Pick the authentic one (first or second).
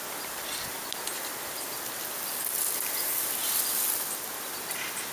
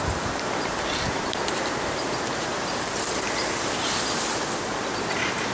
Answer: first